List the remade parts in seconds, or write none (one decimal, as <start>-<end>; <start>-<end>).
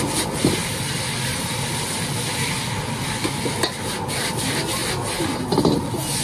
none